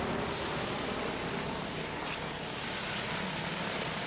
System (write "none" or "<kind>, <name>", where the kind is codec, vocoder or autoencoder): none